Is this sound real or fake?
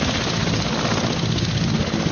real